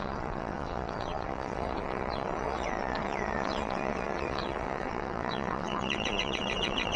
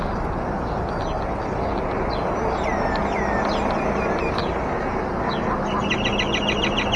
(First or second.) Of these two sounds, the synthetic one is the first